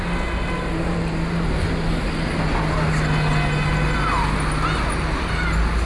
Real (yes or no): yes